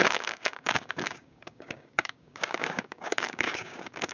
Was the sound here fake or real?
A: fake